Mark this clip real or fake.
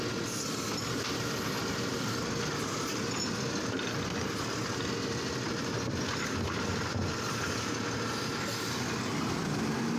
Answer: real